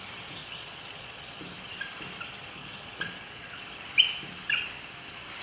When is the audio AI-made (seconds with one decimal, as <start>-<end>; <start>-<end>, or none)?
0.4-1.4; 2.6-3.6